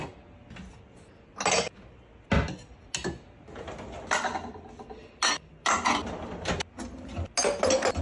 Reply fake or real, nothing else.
real